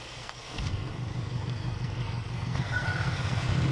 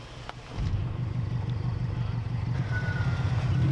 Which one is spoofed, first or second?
first